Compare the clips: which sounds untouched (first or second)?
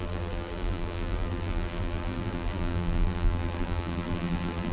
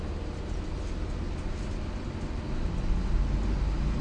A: second